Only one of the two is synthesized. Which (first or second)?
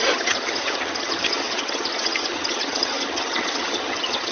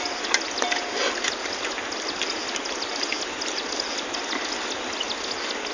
first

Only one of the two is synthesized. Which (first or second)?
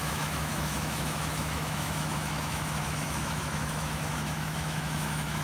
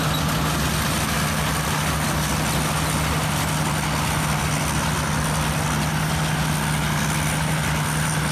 first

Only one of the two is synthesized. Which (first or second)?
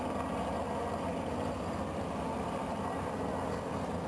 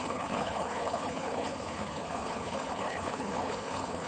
second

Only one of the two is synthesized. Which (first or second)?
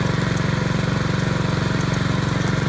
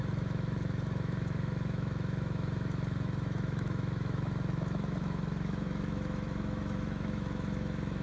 second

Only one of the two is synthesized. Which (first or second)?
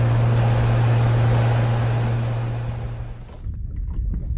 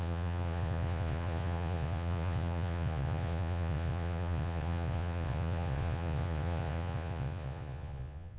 second